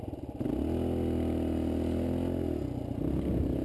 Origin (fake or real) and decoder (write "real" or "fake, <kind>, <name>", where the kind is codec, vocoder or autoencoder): real